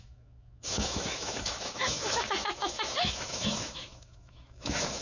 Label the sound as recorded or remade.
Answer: remade